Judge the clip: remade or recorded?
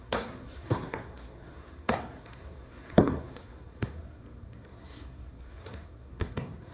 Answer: remade